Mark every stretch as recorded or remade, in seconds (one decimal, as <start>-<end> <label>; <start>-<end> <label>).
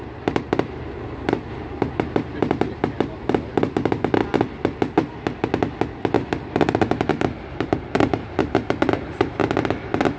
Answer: 0.0-4.2 remade; 4.2-6.2 recorded; 6.2-9.4 remade; 9.4-10.2 recorded